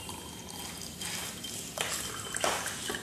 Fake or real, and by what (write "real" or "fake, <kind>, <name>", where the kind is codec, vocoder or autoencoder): real